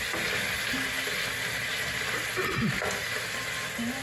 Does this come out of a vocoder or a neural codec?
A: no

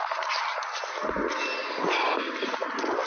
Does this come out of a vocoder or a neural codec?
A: no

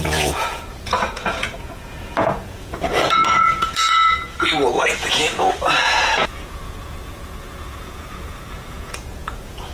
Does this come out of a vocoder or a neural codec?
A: yes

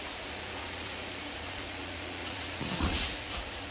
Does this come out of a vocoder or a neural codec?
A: yes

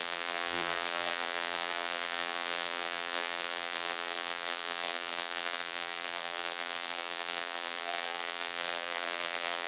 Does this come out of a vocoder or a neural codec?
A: yes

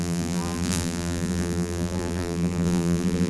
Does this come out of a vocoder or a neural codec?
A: yes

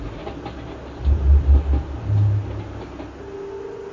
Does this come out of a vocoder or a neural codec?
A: no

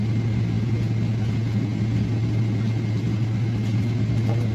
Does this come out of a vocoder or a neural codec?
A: no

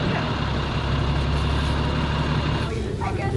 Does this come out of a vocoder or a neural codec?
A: no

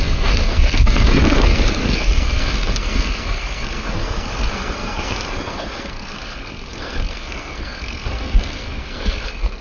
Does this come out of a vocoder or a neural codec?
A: yes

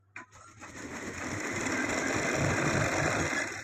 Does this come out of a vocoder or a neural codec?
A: no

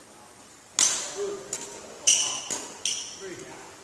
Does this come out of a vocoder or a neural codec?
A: no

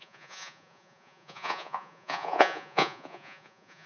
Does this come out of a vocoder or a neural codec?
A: yes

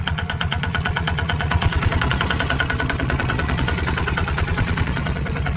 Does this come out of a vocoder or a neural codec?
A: yes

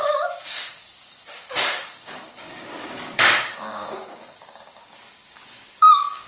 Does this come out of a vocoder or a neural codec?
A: yes